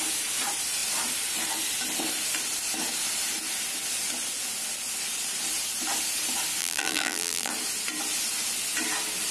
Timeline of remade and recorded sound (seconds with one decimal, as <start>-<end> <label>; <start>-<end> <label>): 0.0-6.6 recorded; 6.6-7.5 remade; 7.5-9.3 recorded